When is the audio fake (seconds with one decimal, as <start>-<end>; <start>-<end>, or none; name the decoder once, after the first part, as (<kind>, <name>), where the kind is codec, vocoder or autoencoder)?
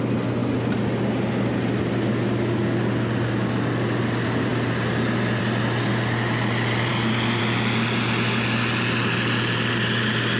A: none